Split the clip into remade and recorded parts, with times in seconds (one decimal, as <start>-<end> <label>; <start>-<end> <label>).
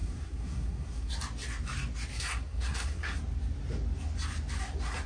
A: 0.0-1.1 remade; 1.1-2.1 recorded; 2.1-3.2 remade; 3.2-5.1 recorded